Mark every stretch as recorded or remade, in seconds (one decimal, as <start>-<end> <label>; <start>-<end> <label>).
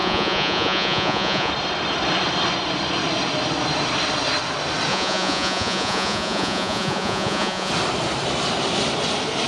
0.0-1.5 remade; 1.5-4.9 recorded; 4.9-7.7 remade; 7.7-9.5 recorded